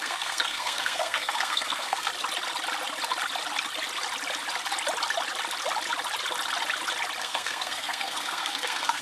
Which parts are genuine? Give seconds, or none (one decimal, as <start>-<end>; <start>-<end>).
2.1-7.2